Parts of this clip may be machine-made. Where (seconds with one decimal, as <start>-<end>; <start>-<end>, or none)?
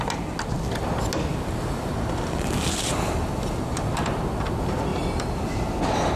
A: 1.3-4.2; 4.9-5.8